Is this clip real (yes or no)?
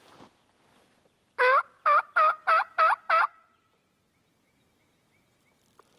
yes